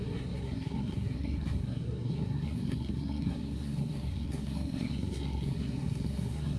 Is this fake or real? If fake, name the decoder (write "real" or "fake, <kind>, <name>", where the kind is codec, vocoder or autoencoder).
fake, codec, SNAC